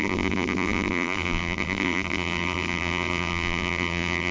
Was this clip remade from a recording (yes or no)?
yes